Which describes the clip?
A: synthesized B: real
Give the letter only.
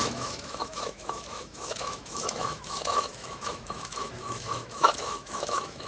A